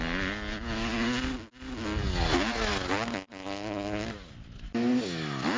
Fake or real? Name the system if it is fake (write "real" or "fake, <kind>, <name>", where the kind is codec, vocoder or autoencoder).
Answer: real